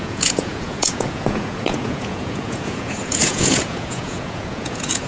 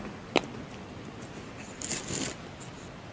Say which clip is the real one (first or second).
second